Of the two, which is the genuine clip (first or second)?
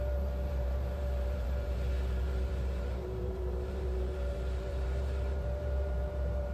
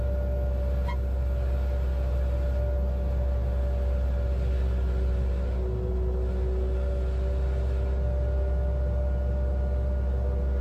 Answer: second